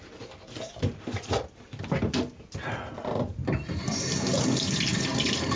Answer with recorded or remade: recorded